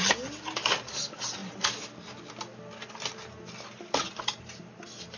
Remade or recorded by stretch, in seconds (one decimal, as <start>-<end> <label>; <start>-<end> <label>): 0.0-5.2 recorded